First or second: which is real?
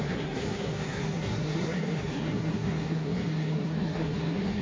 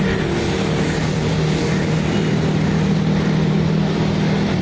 second